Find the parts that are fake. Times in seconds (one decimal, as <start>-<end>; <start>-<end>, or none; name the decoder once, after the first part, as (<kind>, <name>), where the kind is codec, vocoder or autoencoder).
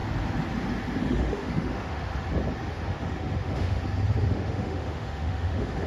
1.0-2.1 (autoencoder, DAC-VAE); 2.7-3.8; 4.3-5.9